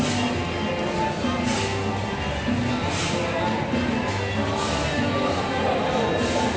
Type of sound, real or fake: real